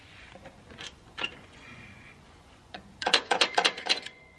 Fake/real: fake